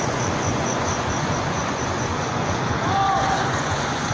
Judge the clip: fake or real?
fake